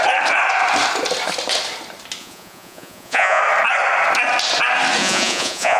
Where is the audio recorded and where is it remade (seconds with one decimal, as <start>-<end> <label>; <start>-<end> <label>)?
0.0-2.2 recorded; 2.2-3.4 remade; 3.4-5.0 recorded; 5.0-5.8 remade